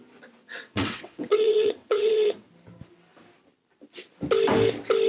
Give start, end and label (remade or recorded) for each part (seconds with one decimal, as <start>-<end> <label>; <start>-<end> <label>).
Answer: 0.0-0.4 recorded; 0.4-2.5 remade; 2.5-5.1 recorded